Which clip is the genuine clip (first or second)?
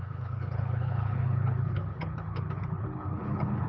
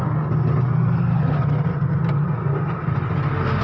second